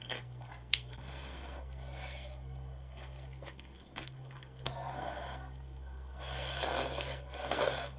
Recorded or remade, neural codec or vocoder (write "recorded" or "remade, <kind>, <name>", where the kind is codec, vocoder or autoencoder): remade, codec, SNAC